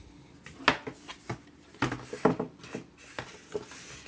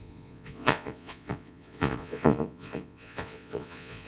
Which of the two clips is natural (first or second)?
first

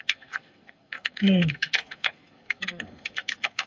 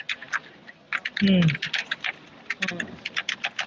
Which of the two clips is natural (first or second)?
second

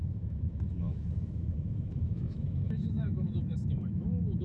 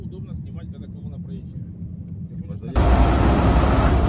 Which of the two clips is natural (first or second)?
second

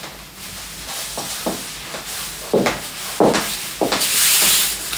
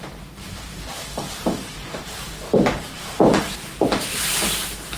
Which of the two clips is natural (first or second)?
first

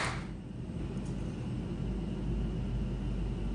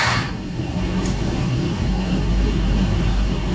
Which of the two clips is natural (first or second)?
first